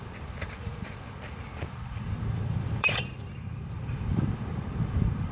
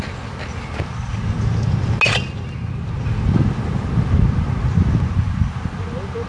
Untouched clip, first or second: second